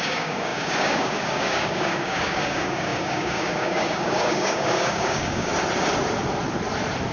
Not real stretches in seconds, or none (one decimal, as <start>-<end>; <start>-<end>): 0.0-5.5